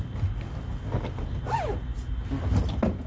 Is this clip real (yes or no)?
yes